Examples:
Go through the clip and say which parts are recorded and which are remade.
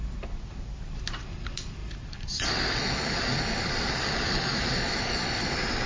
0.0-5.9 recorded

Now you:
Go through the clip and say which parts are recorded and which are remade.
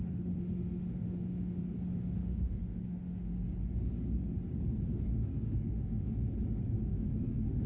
0.0-3.3 remade; 3.3-4.9 recorded; 4.9-6.3 remade; 6.3-6.8 recorded; 6.8-7.7 remade